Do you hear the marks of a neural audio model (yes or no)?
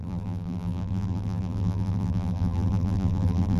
yes